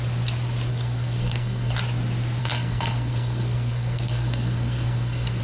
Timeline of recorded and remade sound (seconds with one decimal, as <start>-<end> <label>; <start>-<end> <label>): 0.0-0.7 recorded; 0.7-1.7 remade; 1.7-2.4 recorded; 2.4-5.4 remade